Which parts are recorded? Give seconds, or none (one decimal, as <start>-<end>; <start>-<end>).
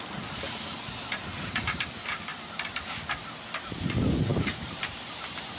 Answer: 0.0-1.3; 1.9-4.3